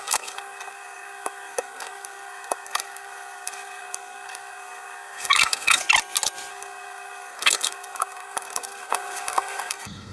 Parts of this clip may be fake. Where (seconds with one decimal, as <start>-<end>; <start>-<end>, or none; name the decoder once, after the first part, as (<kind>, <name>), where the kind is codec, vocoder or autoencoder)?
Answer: 0.0-5.8 (codec, SNAC); 6.5-10.1